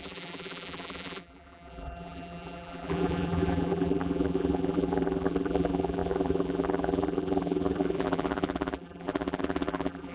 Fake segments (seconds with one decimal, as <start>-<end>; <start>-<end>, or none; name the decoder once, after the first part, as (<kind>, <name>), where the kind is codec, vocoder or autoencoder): 0.0-10.1 (vocoder, BigVGAN v2)